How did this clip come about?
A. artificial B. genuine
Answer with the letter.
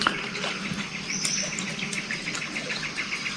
B